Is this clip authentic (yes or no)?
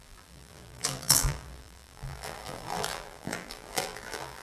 no